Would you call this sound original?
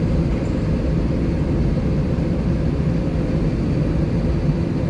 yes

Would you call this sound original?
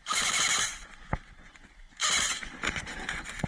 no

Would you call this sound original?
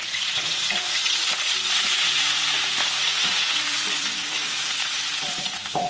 no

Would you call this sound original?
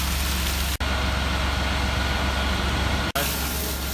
yes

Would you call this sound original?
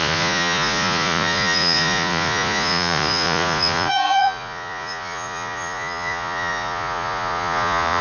no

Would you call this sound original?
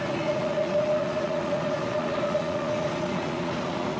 no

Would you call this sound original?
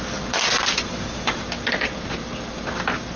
yes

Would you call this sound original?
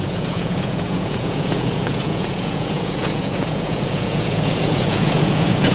no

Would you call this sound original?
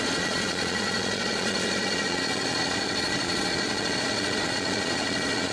no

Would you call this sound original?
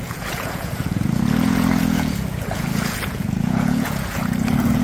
no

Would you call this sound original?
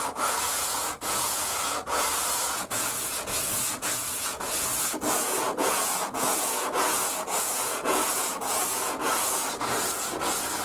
no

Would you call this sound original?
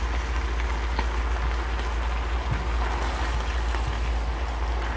yes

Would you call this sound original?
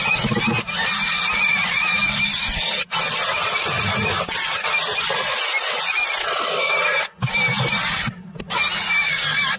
yes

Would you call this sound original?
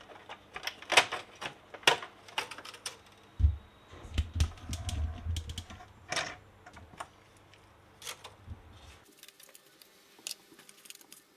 yes